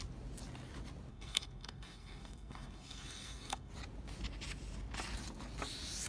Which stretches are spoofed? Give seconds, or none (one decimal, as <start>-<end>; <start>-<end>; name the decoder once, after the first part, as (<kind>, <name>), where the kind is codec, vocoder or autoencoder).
1.1-3.7 (codec, SNAC)